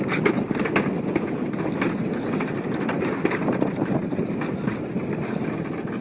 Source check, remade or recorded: recorded